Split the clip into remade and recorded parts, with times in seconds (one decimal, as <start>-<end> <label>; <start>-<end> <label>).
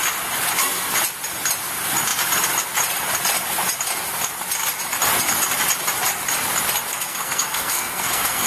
0.0-6.9 recorded; 6.9-8.5 remade